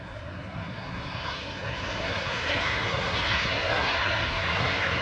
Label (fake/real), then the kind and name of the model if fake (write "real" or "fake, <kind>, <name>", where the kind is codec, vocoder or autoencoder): fake, codec, SNAC